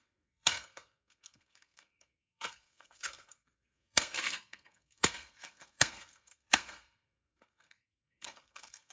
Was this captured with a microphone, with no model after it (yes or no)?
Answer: no